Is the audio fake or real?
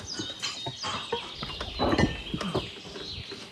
real